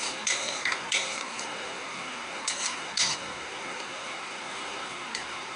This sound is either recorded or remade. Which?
remade